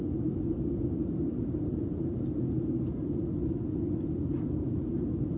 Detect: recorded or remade recorded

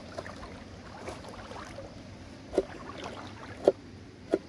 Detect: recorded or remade recorded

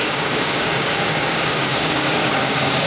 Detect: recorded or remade remade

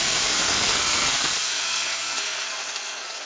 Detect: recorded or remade remade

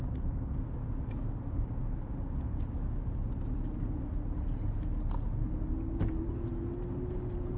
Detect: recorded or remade recorded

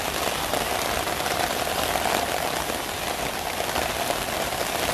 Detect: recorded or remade remade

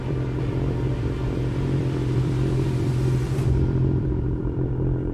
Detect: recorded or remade remade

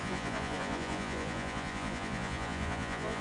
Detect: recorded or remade remade